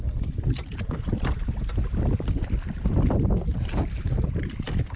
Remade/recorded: recorded